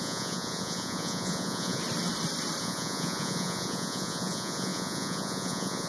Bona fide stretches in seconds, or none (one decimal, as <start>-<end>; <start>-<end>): 1.8-2.6